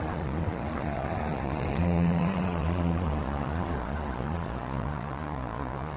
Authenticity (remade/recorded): remade